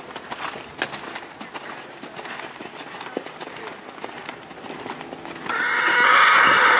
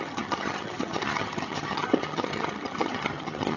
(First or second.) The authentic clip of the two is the first